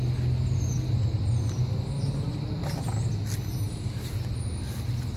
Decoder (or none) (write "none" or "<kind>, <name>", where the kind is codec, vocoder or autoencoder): none